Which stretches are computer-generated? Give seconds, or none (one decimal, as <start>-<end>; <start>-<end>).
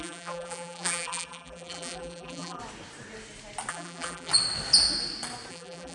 0.0-2.6; 3.7-4.3; 5.5-5.9